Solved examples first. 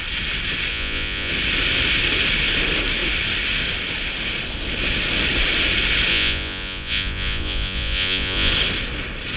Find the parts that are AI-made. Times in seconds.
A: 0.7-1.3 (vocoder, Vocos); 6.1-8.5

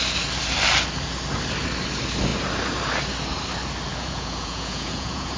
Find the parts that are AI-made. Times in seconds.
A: 3.9-5.4 (vocoder, Vocos)

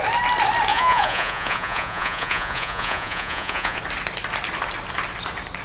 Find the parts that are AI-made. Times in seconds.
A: 0.7-3.8 (vocoder, Vocos)

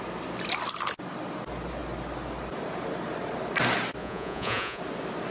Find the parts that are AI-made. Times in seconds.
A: 4.0-4.8 (vocoder, Vocos)

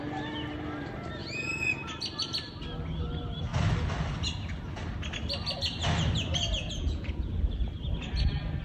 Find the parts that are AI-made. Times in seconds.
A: 1.2-1.7 (vocoder, Vocos); 6.5-7.3

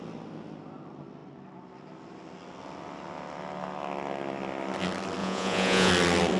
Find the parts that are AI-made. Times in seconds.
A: 5.2-5.9 (vocoder, Vocos)

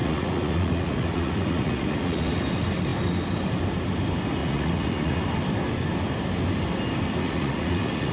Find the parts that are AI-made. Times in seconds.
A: 0.0-2.3 (vocoder, Vocos); 4.4-5.2; 7.2-8.1

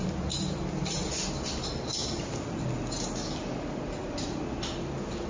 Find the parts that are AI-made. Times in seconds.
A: none